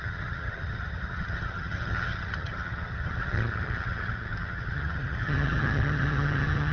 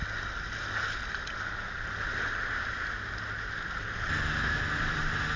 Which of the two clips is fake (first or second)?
first